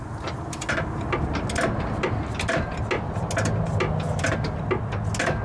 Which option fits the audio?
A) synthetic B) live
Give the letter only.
B